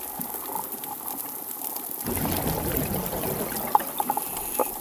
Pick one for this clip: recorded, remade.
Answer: recorded